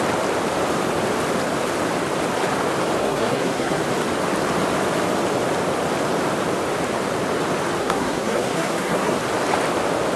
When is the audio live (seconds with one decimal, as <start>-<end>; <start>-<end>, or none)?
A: 0.0-3.0; 3.8-7.8; 9.2-10.2